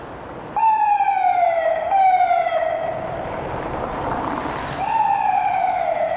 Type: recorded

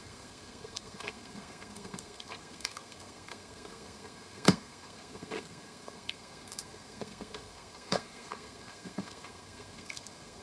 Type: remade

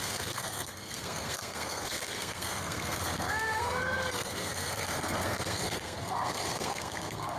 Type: remade